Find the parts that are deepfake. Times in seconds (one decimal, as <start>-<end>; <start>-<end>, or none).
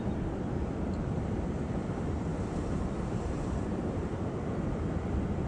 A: 2.3-4.2